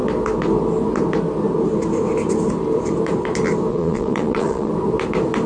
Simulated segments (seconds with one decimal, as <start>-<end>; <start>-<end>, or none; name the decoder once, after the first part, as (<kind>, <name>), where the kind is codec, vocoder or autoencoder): 3.7-4.7 (vocoder, Vocos)